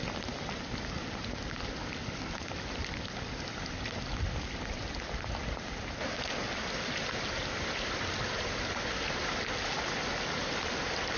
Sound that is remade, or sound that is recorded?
recorded